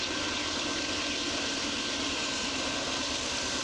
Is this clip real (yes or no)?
no